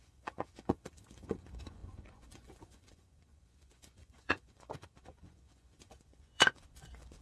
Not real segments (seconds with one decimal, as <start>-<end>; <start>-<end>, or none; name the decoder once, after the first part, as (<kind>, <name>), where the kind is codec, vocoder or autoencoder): 0.0-7.2 (vocoder, Vocos)